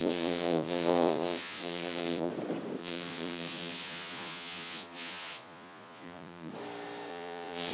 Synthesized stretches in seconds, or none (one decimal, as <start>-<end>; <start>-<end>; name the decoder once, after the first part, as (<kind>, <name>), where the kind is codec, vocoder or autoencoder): 0.0-2.3 (vocoder, Vocos); 2.8-6.5; 7.1-7.7

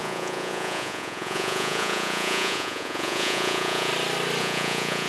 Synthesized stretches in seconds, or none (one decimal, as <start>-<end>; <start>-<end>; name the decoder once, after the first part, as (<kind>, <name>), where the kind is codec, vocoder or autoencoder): 0.0-3.9 (vocoder, Vocos); 4.4-5.1